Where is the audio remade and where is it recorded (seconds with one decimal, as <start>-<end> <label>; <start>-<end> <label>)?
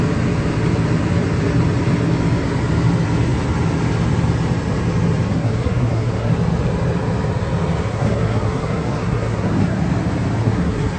0.0-5.3 recorded; 5.3-6.3 remade; 6.3-7.9 recorded; 7.9-9.8 remade; 9.8-10.4 recorded; 10.4-11.0 remade